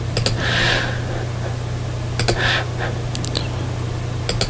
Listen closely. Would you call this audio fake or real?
real